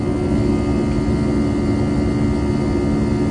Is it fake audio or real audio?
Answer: real